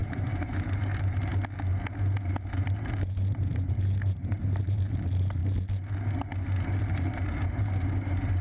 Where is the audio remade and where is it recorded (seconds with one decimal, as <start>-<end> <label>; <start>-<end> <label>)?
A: 0.0-1.3 remade; 1.3-2.5 recorded; 2.5-5.4 remade; 5.4-6.8 recorded; 6.8-8.4 remade